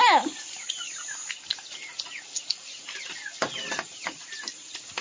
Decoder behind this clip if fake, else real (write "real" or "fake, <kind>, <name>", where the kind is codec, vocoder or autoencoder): real